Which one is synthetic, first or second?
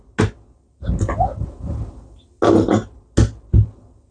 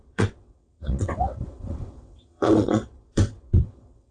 second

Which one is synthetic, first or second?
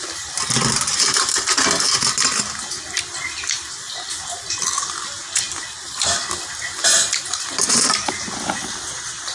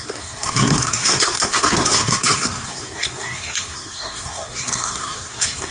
second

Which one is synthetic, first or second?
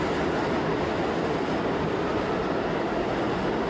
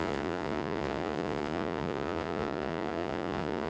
second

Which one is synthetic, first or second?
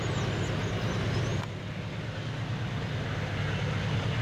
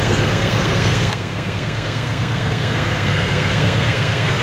second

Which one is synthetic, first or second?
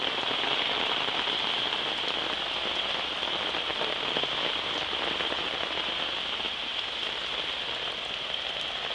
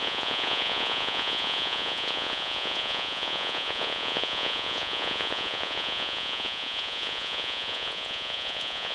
second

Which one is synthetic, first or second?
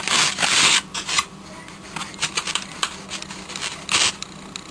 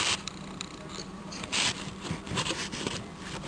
second